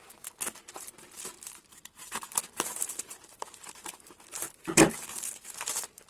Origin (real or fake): fake